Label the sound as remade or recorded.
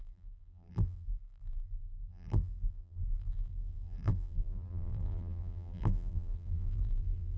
remade